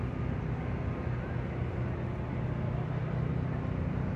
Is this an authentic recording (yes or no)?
yes